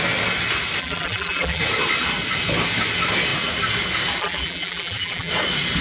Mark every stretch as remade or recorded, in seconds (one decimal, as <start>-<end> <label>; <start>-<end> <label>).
0.0-0.8 recorded; 0.8-1.6 remade; 1.6-4.2 recorded; 4.2-5.3 remade; 5.3-5.8 recorded